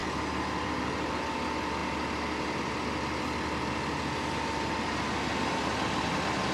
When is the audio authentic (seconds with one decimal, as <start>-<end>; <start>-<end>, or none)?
0.0-6.5

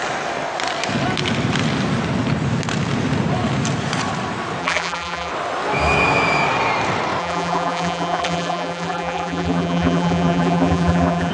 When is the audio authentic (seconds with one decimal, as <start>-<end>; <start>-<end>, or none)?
0.0-4.6; 5.3-7.2

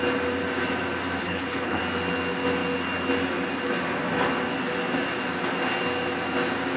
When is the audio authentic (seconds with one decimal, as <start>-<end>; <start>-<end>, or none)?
0.0-1.2; 1.8-6.8

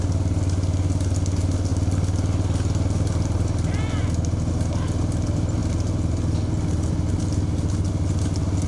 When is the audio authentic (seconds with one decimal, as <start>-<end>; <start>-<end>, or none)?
0.0-8.7

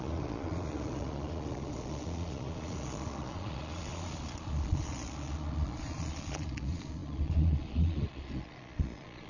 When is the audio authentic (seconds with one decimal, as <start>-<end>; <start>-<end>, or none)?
none

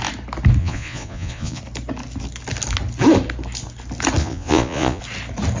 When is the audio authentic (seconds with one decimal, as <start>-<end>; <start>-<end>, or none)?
0.0-0.6; 1.6-4.2; 5.0-5.6

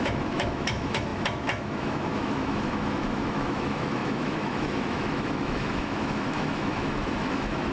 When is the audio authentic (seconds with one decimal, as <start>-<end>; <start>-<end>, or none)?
none